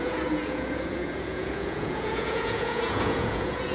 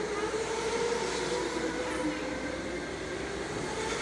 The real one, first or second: second